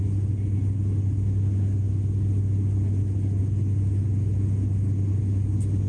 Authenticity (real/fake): real